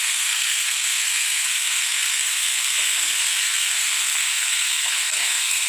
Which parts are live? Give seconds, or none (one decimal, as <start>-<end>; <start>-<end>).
none